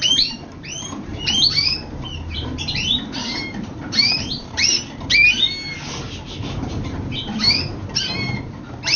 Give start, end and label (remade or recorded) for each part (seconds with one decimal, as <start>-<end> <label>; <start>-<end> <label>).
0.0-4.6 remade; 4.6-6.3 recorded; 6.3-9.0 remade